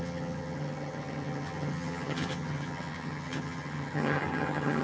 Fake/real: fake